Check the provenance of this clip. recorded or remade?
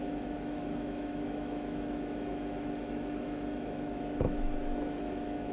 remade